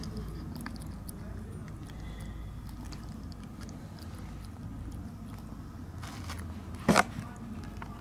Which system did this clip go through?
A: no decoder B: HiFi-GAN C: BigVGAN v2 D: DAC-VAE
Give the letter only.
A